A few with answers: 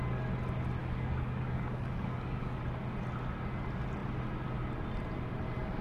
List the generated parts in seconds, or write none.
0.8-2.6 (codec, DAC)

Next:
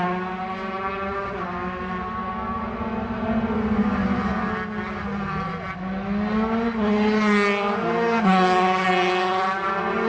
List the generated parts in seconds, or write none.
none